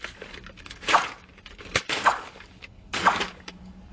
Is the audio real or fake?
fake